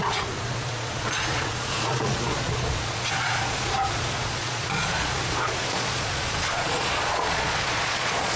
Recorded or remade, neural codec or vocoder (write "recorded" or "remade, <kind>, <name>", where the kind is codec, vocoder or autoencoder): remade, vocoder, Vocos